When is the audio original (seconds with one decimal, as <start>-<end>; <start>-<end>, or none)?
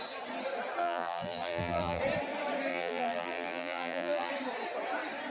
0.0-0.8; 2.0-2.7; 4.3-5.3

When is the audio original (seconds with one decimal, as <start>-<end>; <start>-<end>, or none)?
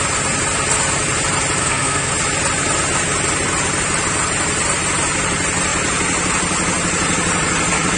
0.0-1.6; 2.1-8.0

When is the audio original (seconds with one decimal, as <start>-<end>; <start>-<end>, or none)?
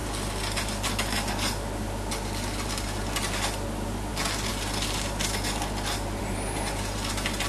0.0-7.5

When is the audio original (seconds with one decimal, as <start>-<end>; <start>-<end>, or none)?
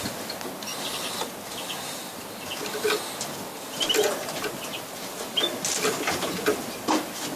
0.0-7.4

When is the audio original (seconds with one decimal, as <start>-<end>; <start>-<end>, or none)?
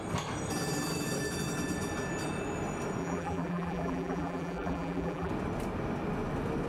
0.0-3.0; 5.3-6.7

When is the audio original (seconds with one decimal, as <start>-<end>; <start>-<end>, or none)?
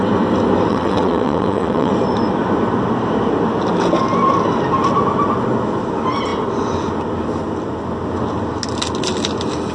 0.0-0.7; 1.9-9.7